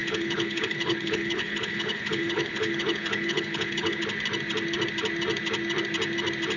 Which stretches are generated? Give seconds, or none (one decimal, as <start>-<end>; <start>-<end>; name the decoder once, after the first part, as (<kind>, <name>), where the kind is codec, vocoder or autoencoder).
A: 0.0-4.0 (codec, HILCodec)